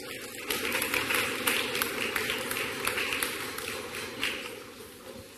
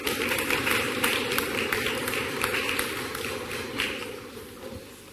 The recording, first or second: first